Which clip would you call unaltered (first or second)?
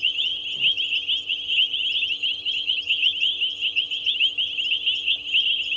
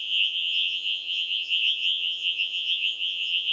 first